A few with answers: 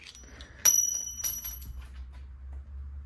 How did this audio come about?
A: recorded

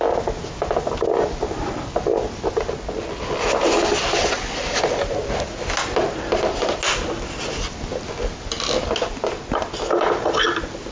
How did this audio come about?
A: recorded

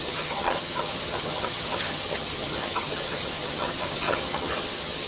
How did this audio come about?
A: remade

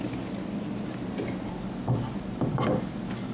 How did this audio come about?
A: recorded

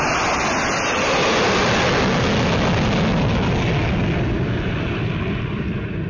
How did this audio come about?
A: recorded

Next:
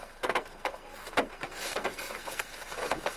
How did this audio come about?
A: remade